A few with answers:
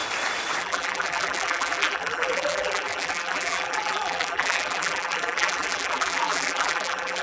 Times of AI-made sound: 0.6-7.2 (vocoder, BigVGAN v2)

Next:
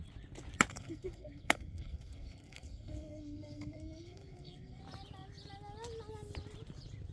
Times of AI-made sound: 0.7-4.8 (codec, SNAC)

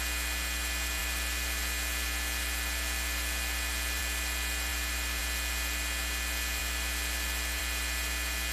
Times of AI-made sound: 1.0-4.0 (vocoder, BigVGAN v2); 4.7-5.2; 6.6-7.6

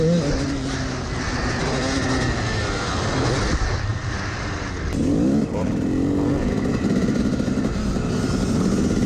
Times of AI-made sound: 3.9-4.7 (vocoder, BigVGAN v2); 6.7-7.3

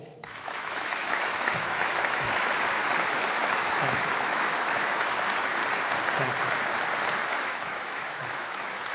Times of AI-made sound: 0.0-2.8 (autoencoder, DAC-VAE); 3.3-5.6; 7.3-8.9

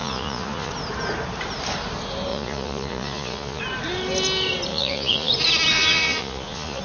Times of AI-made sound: 0.0-0.7 (vocoder, Vocos); 2.3-3.6; 4.7-5.3; 5.7-6.8

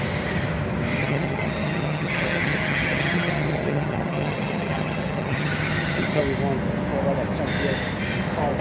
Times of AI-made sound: 1.0-6.2 (vocoder, HiFi-GAN)